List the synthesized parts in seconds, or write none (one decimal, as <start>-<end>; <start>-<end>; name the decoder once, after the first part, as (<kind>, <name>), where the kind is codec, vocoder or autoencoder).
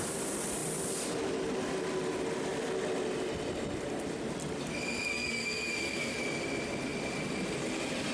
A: 5.1-6.1 (codec, SNAC)